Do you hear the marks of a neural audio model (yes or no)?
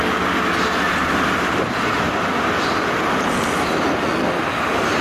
no